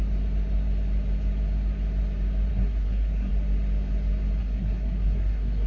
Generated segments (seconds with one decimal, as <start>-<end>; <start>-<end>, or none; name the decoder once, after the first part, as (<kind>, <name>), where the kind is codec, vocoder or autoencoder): 2.5-3.3 (codec, SNAC); 4.4-5.7